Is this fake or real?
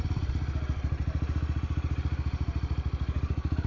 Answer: real